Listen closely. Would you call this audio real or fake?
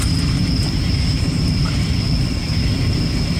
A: real